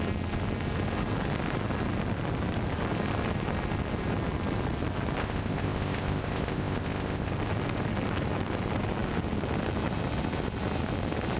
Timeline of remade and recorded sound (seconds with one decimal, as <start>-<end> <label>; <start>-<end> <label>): 0.0-5.2 recorded; 5.2-7.3 remade; 7.3-11.4 recorded